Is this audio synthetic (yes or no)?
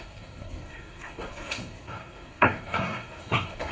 yes